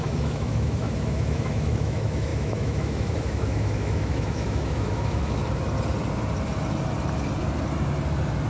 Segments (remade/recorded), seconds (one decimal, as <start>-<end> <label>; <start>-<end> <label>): 0.0-5.4 remade; 5.4-8.5 recorded